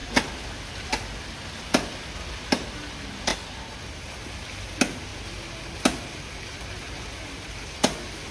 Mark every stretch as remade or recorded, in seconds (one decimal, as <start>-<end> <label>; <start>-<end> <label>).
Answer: 0.0-8.3 recorded

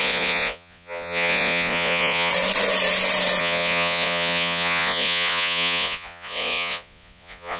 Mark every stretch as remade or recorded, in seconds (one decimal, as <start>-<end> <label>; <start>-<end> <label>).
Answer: 0.0-2.3 remade; 2.3-3.4 recorded; 3.4-7.6 remade

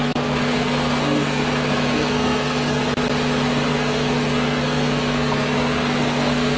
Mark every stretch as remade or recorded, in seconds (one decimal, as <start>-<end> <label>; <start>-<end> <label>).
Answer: 0.0-2.8 remade; 2.8-3.7 recorded; 3.7-6.6 remade

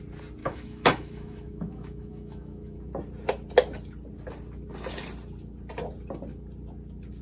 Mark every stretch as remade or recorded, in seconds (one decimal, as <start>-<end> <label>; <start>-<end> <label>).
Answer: 0.0-0.4 recorded; 0.4-2.9 remade; 2.9-7.2 recorded

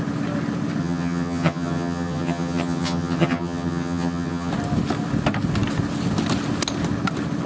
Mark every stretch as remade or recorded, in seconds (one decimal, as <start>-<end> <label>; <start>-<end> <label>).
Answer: 0.0-0.8 recorded; 0.8-4.5 remade; 4.5-7.5 recorded

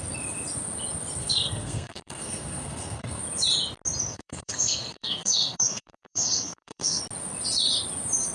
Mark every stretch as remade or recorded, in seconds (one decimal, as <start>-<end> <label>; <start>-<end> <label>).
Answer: 0.0-1.2 recorded; 1.2-3.2 remade; 3.2-4.1 recorded; 4.1-7.0 remade; 7.0-8.3 recorded

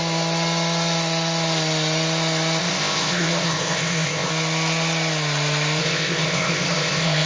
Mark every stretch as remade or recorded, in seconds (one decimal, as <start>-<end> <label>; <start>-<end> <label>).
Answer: 0.0-2.6 recorded; 2.6-4.3 remade; 4.3-5.8 recorded; 5.8-7.3 remade